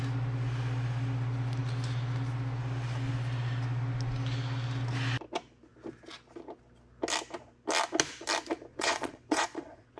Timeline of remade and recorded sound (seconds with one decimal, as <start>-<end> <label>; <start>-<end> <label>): 0.0-8.7 recorded; 8.7-10.0 remade